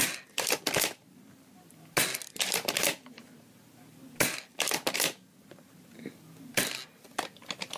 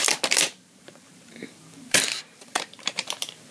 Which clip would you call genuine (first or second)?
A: first